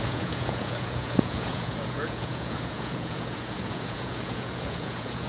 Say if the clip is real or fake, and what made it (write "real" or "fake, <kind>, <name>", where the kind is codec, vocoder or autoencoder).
fake, vocoder, Vocos